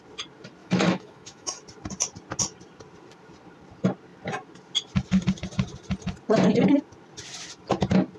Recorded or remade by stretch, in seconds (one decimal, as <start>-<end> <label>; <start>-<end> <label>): 0.0-0.6 recorded; 0.6-1.6 remade; 1.6-8.2 recorded